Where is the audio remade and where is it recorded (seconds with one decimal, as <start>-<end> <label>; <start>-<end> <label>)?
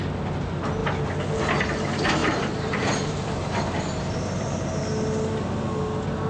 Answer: 0.0-2.2 recorded; 2.2-4.0 remade; 4.0-6.3 recorded